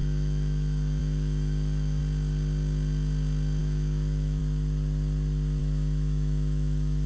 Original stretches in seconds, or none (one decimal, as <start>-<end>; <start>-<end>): 2.0-3.6; 4.4-5.6